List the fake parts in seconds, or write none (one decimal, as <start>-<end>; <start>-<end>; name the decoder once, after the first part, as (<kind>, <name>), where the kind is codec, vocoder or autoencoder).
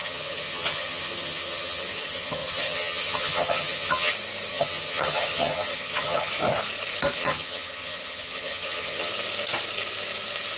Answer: 0.0-4.1 (vocoder, HiFi-GAN); 4.5-6.3; 7.2-9.1